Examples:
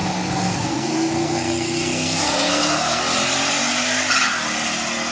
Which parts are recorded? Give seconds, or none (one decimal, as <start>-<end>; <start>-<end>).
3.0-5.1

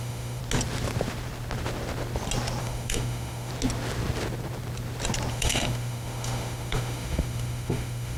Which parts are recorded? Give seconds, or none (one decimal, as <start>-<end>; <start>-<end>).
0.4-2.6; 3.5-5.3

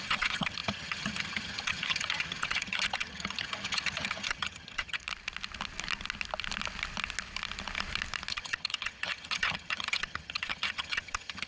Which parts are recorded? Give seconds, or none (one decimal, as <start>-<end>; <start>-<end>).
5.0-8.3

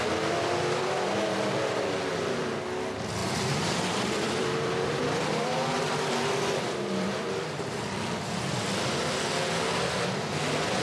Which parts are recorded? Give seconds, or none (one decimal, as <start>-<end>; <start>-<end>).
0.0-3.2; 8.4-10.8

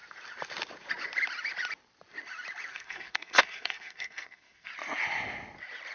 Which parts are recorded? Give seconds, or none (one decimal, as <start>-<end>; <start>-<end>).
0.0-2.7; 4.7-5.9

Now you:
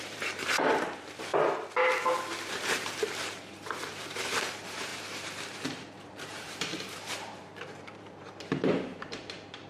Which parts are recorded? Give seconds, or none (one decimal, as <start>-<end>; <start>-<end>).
1.3-2.5